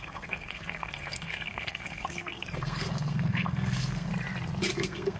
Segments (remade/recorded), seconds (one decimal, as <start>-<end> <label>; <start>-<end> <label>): 0.0-4.1 remade; 4.1-4.7 recorded; 4.7-5.2 remade